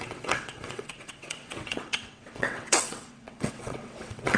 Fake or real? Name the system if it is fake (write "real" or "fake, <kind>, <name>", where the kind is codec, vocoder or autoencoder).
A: fake, vocoder, WaveNeXt